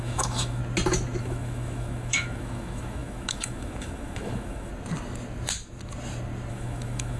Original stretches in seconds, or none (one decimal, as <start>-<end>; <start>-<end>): 0.6-1.2; 4.7-6.5